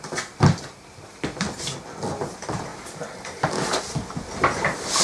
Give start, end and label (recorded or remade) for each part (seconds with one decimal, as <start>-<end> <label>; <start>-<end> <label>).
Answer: 0.0-2.7 remade; 2.7-3.2 recorded; 3.2-5.0 remade